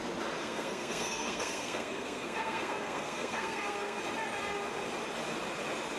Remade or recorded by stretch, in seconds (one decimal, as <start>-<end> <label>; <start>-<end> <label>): 0.0-0.4 recorded; 0.4-4.0 remade; 4.0-6.0 recorded

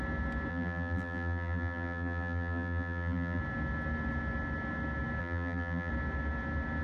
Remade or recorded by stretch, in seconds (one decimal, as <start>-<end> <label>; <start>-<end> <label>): 0.0-0.5 recorded; 0.5-3.4 remade; 3.4-5.2 recorded; 5.2-5.9 remade; 5.9-6.8 recorded

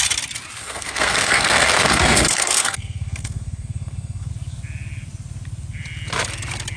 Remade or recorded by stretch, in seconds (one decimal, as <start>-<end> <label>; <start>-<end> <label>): 0.0-0.6 recorded; 0.6-4.3 remade; 4.3-6.8 recorded

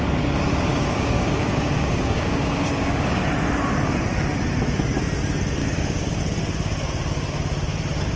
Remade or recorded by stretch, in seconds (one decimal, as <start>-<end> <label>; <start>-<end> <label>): 0.0-0.7 recorded; 0.7-3.2 remade; 3.2-5.6 recorded; 5.6-6.2 remade; 6.2-8.2 recorded

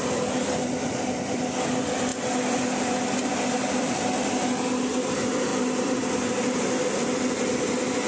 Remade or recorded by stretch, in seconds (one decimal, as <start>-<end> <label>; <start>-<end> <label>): 0.0-8.1 recorded

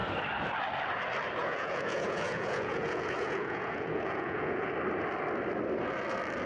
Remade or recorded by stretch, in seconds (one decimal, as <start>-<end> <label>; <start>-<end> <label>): 0.0-1.4 recorded; 1.4-4.7 remade; 4.7-6.5 recorded

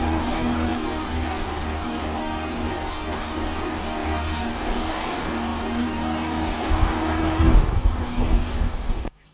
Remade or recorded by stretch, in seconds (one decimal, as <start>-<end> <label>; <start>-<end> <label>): 0.0-9.3 remade